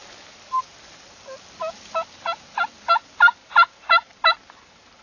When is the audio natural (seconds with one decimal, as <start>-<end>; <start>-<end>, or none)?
0.0-3.4